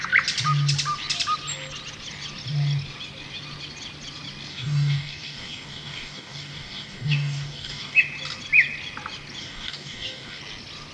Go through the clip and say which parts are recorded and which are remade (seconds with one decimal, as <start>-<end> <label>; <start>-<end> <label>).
0.0-4.5 recorded; 4.5-8.0 remade; 8.0-9.4 recorded; 9.4-10.4 remade; 10.4-10.9 recorded